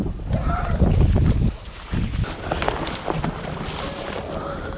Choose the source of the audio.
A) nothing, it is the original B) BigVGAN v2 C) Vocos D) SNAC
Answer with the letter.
A